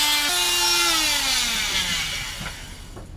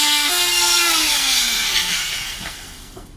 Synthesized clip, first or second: second